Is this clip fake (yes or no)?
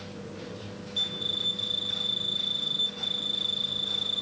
no